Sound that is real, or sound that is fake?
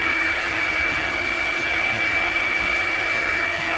fake